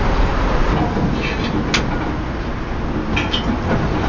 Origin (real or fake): real